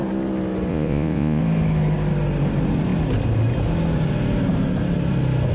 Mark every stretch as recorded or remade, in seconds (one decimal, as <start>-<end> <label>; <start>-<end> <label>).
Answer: 0.0-0.7 recorded; 0.7-1.4 remade; 1.4-5.5 recorded